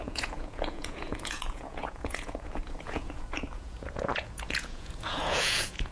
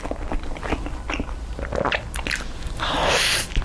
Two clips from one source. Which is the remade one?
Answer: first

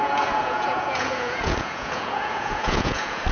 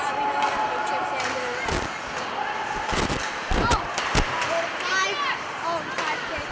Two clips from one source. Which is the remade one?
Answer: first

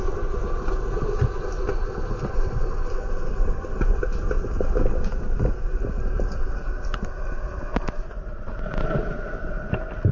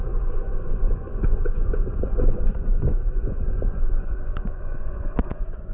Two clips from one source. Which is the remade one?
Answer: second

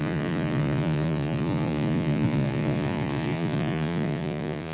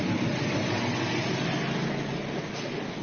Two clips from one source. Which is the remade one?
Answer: first